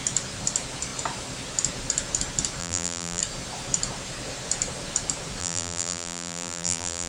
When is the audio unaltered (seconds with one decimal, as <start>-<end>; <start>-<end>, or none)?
0.0-2.6; 3.2-5.4